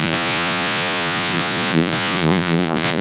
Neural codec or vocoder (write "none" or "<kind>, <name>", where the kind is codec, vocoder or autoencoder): vocoder, Vocos